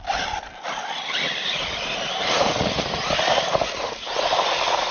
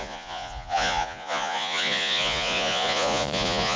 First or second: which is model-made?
second